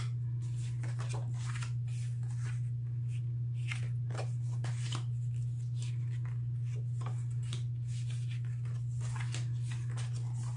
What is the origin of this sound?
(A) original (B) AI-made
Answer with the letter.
A